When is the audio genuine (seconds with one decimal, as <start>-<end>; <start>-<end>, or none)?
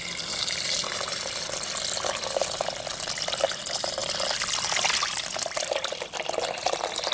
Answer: 0.0-7.1